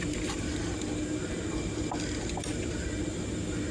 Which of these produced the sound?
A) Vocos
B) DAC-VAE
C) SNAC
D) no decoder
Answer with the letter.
D